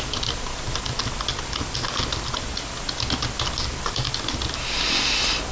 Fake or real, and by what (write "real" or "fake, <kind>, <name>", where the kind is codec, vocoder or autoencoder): real